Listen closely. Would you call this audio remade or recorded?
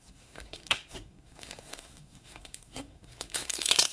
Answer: remade